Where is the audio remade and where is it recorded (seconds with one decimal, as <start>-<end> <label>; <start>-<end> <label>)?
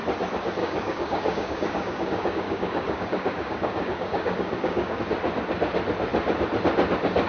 0.0-0.6 recorded; 0.6-5.0 remade; 5.0-7.3 recorded